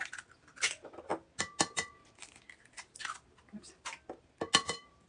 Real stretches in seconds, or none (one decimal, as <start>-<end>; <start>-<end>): 0.0-5.1

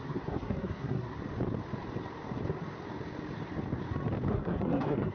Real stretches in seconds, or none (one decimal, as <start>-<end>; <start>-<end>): 1.2-4.3